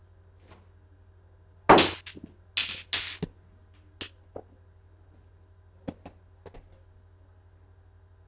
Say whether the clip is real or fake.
real